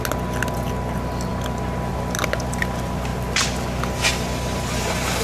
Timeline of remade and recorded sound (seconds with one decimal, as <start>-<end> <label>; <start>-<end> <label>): 0.0-5.2 recorded